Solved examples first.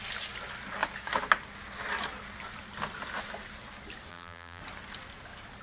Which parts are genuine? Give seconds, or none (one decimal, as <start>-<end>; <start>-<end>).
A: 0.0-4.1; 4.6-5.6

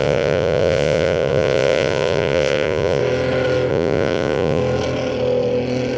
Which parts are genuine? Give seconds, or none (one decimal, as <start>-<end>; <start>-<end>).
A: 3.0-3.7; 4.6-6.0

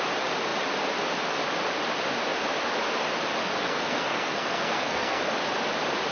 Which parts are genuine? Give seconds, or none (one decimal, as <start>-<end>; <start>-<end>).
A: 0.0-3.4; 5.2-6.1

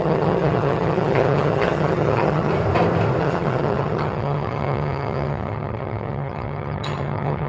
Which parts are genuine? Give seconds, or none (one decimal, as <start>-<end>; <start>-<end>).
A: 2.5-3.2

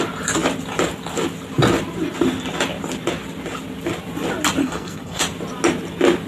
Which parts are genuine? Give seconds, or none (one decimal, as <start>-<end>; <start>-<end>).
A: 0.0-4.6; 5.2-6.3

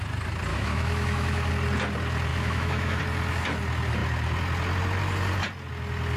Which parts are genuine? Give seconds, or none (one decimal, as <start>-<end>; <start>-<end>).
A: 0.0-0.5; 1.5-2.3; 3.0-6.2

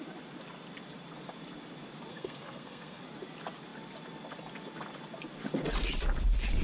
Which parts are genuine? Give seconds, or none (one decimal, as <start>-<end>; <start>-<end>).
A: 0.0-2.1; 3.0-6.6